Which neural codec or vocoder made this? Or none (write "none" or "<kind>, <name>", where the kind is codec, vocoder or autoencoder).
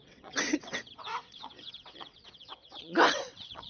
vocoder, WaveNeXt